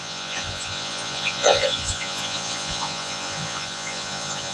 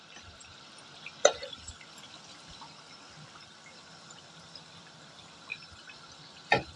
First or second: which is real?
second